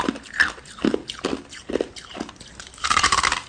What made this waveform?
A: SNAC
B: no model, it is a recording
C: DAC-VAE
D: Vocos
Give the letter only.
B